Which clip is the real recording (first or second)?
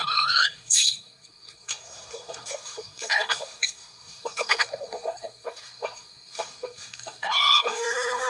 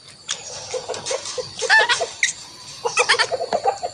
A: second